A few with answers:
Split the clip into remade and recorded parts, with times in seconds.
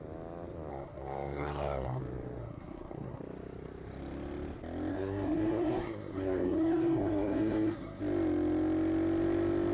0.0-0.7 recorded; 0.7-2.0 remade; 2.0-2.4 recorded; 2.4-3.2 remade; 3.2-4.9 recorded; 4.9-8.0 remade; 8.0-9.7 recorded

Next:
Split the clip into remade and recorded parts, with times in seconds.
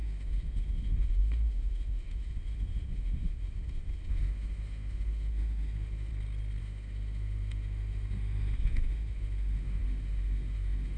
0.0-6.1 remade; 6.1-6.6 recorded; 6.6-11.0 remade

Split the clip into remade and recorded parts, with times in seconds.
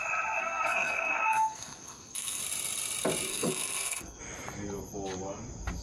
0.0-0.4 recorded; 0.4-2.4 remade; 2.4-3.3 recorded; 3.3-4.2 remade; 4.2-5.8 recorded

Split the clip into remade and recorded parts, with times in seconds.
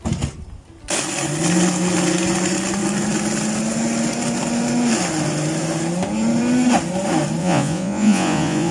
0.0-7.4 recorded; 7.4-8.7 remade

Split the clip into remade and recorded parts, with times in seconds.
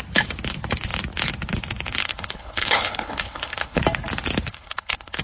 0.0-2.0 recorded; 2.0-3.8 remade; 3.8-4.5 recorded; 4.5-5.2 remade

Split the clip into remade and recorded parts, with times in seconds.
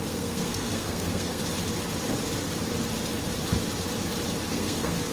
0.0-1.4 remade; 1.4-4.5 recorded; 4.5-5.1 remade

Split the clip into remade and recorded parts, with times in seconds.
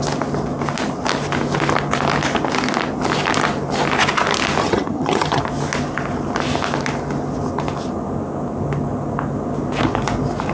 0.0-4.6 recorded; 4.6-5.4 remade; 5.4-10.5 recorded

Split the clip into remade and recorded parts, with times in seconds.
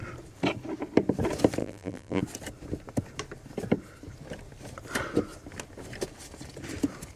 0.0-1.6 recorded; 1.6-2.2 remade; 2.2-7.2 recorded